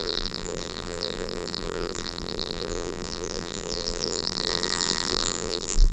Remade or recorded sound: remade